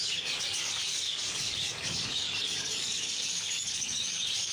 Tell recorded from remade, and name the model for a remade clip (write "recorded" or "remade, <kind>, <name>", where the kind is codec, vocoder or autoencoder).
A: remade, codec, DAC